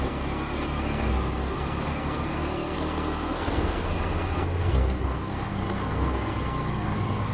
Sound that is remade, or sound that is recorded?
remade